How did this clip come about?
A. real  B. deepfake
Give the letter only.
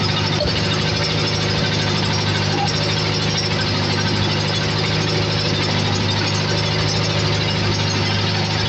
A